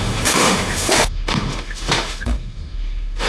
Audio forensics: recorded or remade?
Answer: remade